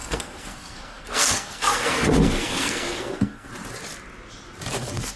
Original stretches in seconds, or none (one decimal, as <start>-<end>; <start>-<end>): 3.5-4.7